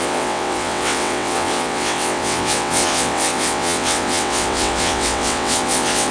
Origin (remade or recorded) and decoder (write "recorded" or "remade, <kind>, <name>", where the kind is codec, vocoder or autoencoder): remade, vocoder, WaveNeXt